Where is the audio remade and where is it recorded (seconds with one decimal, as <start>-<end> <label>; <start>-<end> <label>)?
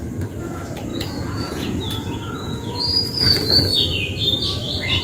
0.0-0.9 recorded; 0.9-2.8 remade; 2.8-5.0 recorded